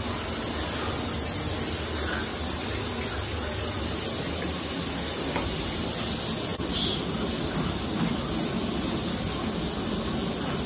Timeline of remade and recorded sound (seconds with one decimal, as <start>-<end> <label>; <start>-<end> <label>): 0.0-10.7 recorded